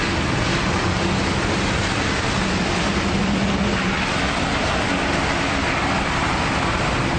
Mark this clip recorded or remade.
recorded